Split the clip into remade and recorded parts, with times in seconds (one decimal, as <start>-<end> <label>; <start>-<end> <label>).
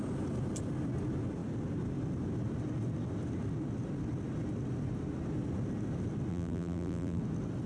0.0-6.3 recorded; 6.3-7.2 remade; 7.2-7.7 recorded